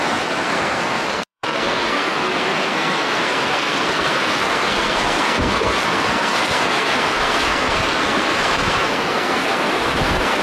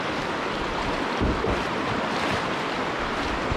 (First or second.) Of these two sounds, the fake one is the first